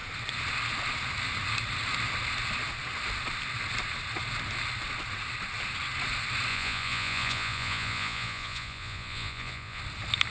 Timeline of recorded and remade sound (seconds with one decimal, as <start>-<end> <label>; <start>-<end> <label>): 0.0-6.5 recorded; 6.5-9.8 remade; 9.8-10.3 recorded

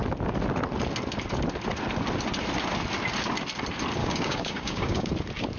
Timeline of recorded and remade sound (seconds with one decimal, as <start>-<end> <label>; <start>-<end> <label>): 0.0-4.0 recorded; 4.0-5.1 remade; 5.1-5.6 recorded

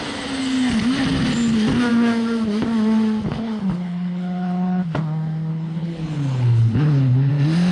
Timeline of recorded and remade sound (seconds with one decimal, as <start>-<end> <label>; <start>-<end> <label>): 0.0-3.3 recorded; 3.3-4.8 remade; 4.8-5.5 recorded; 5.5-7.3 remade; 7.3-7.7 recorded